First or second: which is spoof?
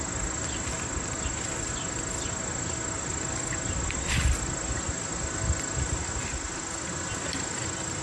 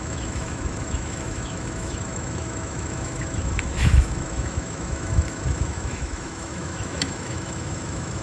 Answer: second